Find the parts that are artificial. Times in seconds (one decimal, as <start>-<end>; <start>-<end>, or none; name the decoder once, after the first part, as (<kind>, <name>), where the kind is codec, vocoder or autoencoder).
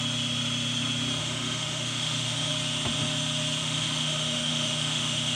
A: 1.2-2.5 (autoencoder, DAC-VAE); 3.6-5.4